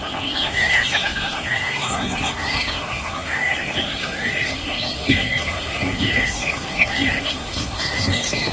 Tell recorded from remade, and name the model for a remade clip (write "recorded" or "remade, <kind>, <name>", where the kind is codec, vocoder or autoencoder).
remade, codec, SNAC